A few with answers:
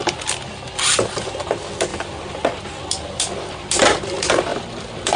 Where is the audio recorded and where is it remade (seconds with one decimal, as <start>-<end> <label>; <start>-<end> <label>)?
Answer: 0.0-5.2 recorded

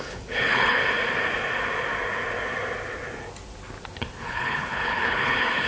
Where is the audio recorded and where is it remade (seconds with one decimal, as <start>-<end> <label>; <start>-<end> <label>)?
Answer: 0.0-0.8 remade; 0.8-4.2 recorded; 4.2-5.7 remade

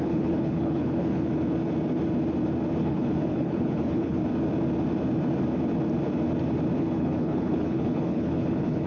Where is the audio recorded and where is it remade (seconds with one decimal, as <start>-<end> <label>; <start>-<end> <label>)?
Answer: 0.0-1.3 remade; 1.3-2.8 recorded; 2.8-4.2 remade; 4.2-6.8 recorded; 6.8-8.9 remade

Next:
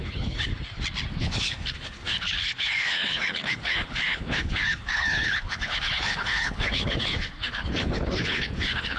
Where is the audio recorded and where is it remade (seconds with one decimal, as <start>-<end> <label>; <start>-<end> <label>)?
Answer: 0.0-0.5 remade; 0.5-1.1 recorded; 1.1-9.0 remade